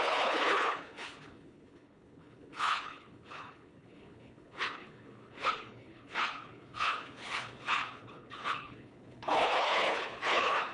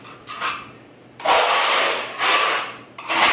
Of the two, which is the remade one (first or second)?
first